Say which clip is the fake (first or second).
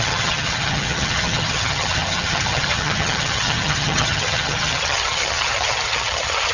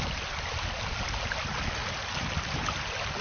first